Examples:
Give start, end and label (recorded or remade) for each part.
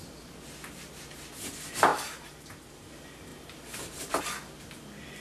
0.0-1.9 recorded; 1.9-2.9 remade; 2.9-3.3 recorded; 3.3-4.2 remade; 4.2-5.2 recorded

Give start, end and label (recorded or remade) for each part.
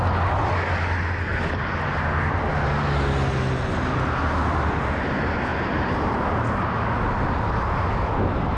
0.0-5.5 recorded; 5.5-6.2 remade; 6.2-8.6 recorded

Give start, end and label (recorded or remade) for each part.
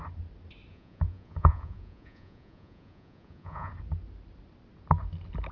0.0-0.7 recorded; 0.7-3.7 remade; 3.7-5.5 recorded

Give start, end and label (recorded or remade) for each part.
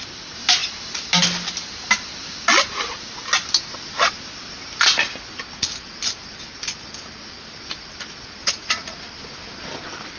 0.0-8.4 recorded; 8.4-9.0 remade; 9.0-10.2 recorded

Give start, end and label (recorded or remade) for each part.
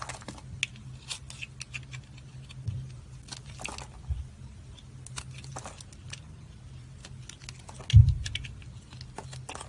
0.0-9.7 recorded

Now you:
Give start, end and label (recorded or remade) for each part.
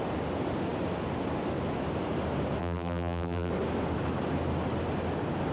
0.0-2.6 recorded; 2.6-3.5 remade; 3.5-5.5 recorded